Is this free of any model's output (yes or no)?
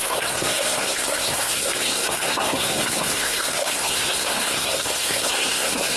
no